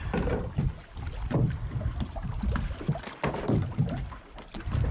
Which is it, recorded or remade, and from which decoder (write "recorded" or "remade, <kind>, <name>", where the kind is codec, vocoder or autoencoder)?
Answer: recorded